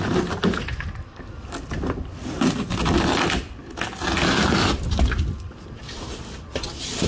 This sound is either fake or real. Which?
real